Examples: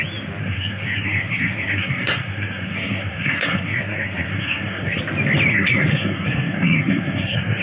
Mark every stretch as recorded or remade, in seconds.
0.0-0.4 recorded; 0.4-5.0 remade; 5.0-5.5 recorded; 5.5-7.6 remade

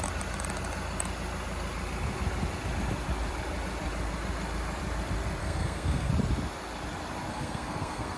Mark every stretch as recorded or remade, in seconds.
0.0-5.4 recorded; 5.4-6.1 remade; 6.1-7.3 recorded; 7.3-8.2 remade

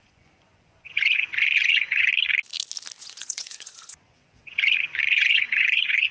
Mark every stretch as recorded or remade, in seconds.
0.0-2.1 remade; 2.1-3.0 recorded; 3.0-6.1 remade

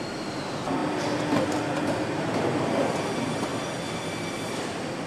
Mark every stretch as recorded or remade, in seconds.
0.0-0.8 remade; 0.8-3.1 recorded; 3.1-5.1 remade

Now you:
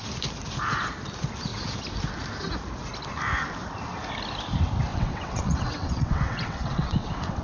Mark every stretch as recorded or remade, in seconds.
0.0-4.9 recorded; 4.9-7.4 remade

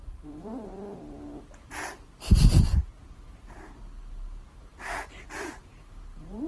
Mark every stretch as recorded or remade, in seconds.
0.0-0.7 remade; 0.7-4.6 recorded; 4.6-6.5 remade

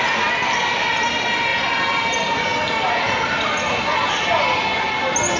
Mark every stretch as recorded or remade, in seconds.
0.0-5.4 recorded